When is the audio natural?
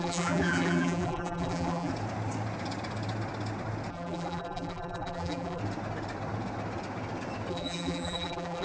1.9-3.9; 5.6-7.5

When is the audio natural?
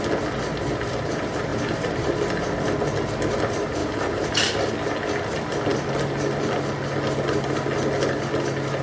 0.0-1.5; 2.1-3.8; 4.7-8.8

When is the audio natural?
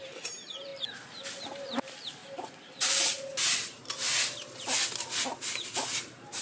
0.7-1.4; 2.2-6.0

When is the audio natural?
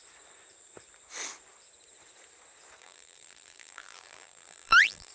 0.0-2.8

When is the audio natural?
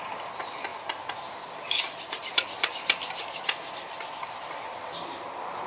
0.0-5.7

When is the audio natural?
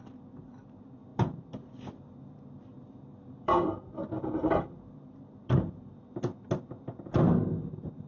0.0-1.1; 5.7-8.1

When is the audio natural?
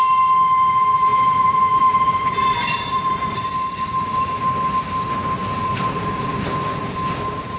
0.0-1.1; 4.4-5.6; 6.8-7.6